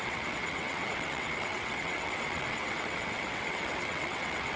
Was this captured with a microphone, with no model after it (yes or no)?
no